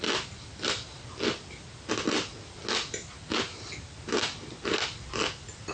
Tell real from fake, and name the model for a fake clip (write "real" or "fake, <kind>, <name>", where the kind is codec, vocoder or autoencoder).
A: real